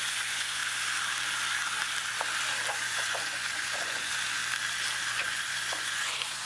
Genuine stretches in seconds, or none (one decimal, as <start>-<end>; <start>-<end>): 0.6-2.7; 4.4-5.1